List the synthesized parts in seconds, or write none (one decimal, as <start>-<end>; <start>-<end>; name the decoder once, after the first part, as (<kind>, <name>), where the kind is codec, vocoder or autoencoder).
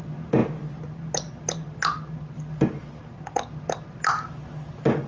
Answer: none